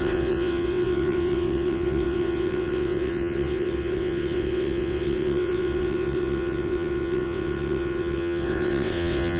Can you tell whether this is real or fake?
fake